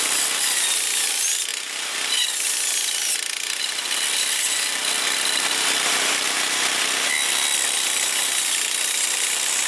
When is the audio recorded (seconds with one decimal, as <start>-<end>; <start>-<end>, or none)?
0.0-9.7